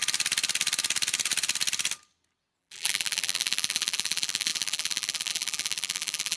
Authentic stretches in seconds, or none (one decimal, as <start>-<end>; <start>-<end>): 0.0-2.6